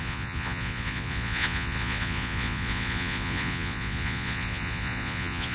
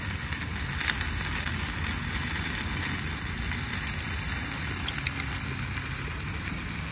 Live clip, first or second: second